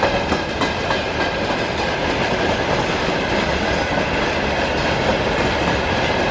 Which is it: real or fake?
real